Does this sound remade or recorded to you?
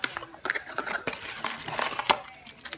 recorded